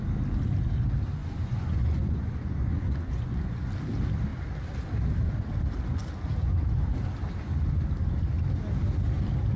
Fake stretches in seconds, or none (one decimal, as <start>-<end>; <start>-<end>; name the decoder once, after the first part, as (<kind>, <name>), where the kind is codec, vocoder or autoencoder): 1.2-3.7 (vocoder, Vocos)